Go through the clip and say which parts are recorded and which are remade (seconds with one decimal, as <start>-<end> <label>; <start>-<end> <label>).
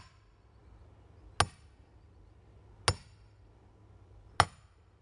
0.0-5.0 recorded